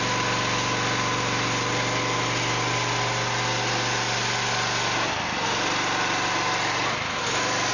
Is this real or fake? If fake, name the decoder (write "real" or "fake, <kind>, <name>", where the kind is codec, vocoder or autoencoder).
real